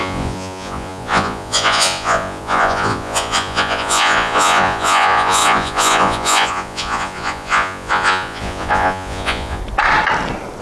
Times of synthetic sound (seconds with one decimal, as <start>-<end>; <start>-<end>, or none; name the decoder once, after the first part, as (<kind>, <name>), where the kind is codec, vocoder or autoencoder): 0.0-9.6 (vocoder, Vocos)